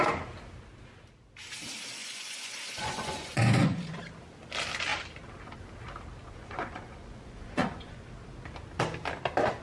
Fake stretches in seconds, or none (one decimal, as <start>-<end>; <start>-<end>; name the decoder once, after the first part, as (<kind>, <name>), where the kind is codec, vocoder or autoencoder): 2.0-4.0 (vocoder, Vocos); 6.2-8.0